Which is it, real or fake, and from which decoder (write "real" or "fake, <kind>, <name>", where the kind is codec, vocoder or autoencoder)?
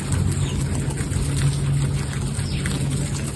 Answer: real